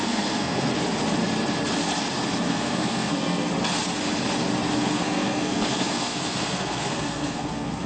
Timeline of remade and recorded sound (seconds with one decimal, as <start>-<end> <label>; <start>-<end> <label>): 0.0-0.7 remade; 0.7-2.5 recorded; 2.5-3.5 remade; 3.5-4.8 recorded; 4.8-7.9 remade